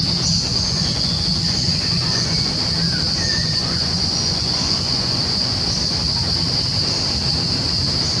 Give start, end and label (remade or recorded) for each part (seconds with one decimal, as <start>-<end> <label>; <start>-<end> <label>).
0.0-0.5 recorded; 0.5-2.5 remade; 2.5-3.3 recorded; 3.3-5.5 remade; 5.5-8.2 recorded